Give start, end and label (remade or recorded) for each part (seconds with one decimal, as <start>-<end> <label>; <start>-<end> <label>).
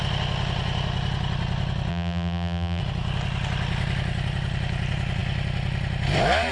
0.0-1.9 recorded; 1.9-2.8 remade; 2.8-6.5 recorded